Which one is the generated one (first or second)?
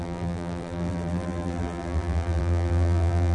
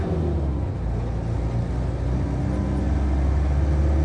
first